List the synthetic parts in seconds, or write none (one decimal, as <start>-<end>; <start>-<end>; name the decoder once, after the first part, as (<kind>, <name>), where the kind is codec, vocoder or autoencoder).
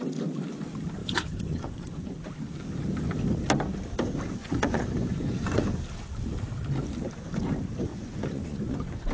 1.0-2.1 (vocoder, Vocos); 4.4-5.6; 7.9-9.1